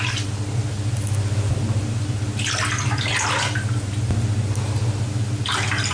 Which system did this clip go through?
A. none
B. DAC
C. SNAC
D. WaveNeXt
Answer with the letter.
A